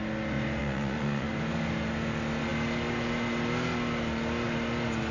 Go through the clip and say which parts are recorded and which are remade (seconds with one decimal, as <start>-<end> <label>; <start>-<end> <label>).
0.0-0.6 recorded; 0.6-1.3 remade; 1.3-5.1 recorded